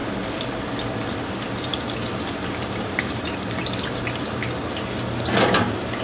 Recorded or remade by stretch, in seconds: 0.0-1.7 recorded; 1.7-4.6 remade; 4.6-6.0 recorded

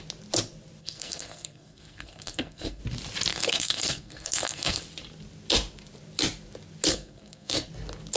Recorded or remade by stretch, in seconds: 0.0-0.8 recorded; 0.8-2.8 remade; 2.8-3.3 recorded; 3.3-4.8 remade; 4.8-6.9 recorded; 6.9-7.7 remade; 7.7-8.2 recorded